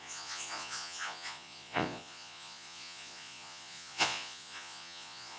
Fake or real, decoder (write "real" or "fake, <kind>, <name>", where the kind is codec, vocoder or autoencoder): fake, vocoder, Vocos